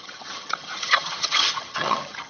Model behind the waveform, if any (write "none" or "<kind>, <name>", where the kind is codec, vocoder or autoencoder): vocoder, HiFi-GAN